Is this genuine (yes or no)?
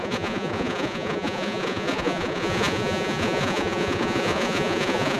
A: no